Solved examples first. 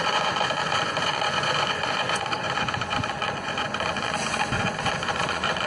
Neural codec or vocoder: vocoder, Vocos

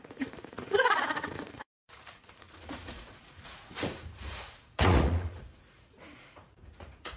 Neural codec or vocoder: vocoder, Vocos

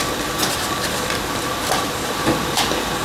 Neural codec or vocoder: none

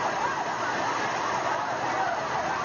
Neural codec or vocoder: none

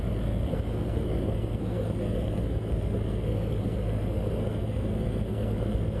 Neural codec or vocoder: codec, SNAC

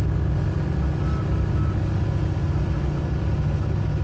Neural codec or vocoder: none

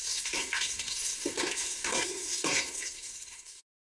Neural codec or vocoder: codec, SNAC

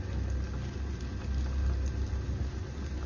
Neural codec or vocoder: none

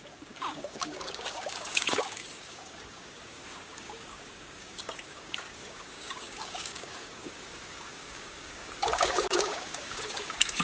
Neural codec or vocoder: codec, DAC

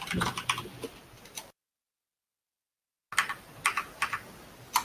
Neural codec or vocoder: none